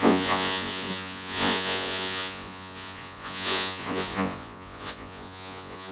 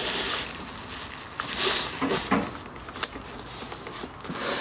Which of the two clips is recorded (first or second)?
second